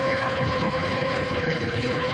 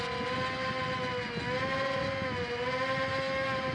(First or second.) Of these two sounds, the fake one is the first